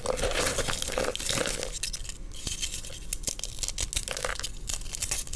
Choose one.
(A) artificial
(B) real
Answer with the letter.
B